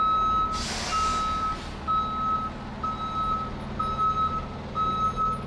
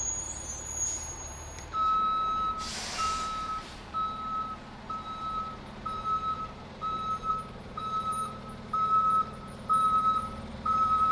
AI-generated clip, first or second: second